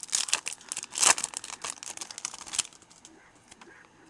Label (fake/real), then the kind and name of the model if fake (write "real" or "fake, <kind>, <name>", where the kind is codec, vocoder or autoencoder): real